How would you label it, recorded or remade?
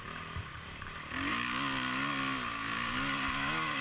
recorded